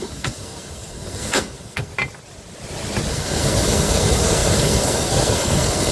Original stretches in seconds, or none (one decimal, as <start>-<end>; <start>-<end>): 1.9-3.1